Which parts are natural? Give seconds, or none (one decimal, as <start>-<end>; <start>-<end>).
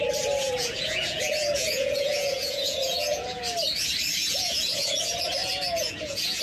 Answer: 0.0-0.4; 3.4-4.2; 5.0-5.4